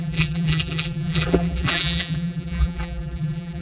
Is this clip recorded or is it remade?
remade